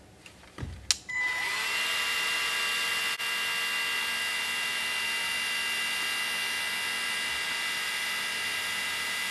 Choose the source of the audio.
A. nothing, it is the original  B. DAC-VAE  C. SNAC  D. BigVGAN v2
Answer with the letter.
A